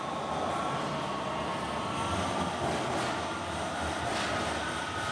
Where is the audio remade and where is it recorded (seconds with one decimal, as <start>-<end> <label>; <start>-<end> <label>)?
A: 0.0-5.1 recorded